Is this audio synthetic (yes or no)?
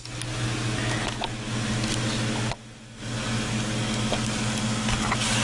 no